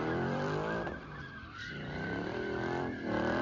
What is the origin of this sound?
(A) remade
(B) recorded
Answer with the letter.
A